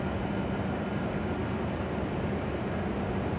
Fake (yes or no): no